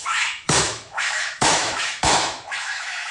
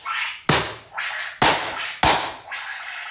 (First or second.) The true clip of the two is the second